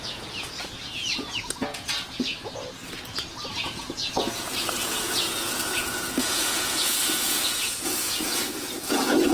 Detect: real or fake fake